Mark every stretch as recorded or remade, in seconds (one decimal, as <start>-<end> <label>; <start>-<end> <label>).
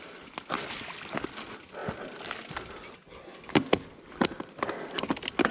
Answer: 0.0-5.5 recorded